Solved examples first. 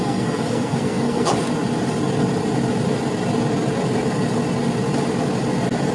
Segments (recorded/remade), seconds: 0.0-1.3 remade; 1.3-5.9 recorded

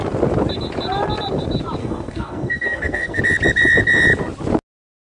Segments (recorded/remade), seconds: 0.0-1.8 recorded; 1.8-3.2 remade; 3.2-5.1 recorded

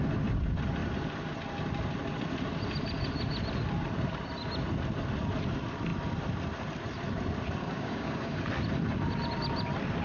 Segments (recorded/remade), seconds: 0.0-7.6 recorded; 7.6-8.4 remade; 8.4-10.0 recorded